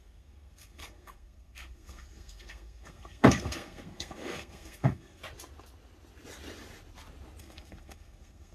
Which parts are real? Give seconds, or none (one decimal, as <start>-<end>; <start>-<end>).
5.2-7.4